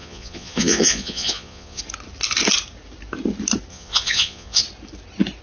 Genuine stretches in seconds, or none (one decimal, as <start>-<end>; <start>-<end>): 1.8-3.7; 4.6-5.4